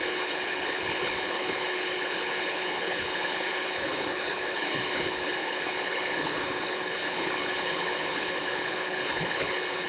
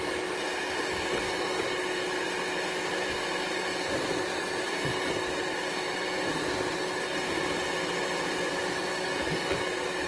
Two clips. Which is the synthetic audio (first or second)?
first